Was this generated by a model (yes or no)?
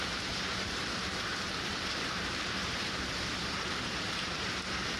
yes